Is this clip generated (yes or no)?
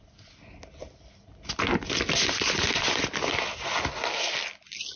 no